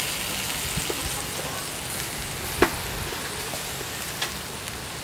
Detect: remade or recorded recorded